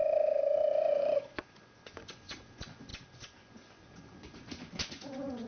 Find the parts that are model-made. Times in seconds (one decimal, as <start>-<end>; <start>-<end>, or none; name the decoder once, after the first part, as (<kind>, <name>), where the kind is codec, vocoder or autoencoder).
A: 0.0-5.5 (vocoder, Vocos)